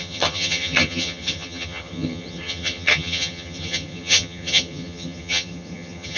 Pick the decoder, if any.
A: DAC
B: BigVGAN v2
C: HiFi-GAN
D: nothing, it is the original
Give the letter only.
C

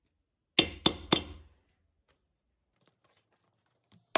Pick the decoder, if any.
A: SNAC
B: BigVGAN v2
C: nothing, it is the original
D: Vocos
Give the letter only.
C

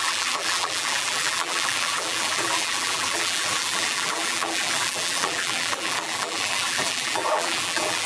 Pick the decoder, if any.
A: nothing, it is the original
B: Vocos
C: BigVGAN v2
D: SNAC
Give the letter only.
C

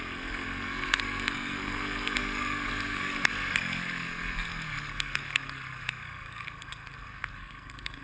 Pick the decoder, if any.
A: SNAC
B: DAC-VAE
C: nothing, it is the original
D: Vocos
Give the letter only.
A